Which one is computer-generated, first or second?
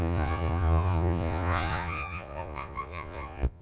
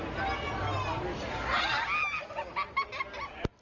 first